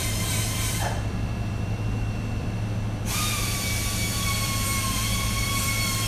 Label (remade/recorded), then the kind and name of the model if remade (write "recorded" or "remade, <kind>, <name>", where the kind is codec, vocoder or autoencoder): remade, vocoder, BigVGAN v2